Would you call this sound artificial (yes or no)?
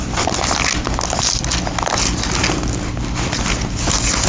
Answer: no